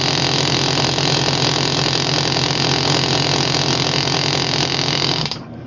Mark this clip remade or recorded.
remade